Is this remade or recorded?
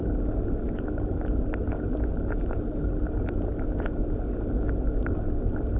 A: recorded